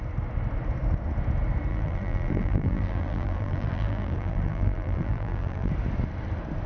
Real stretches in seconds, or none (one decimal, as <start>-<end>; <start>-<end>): 0.0-1.7; 5.7-6.7